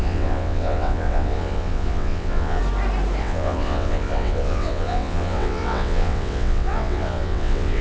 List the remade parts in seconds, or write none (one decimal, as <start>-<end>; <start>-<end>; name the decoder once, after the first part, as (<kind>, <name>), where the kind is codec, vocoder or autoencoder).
0.0-2.6 (vocoder, WaveNeXt); 3.2-7.8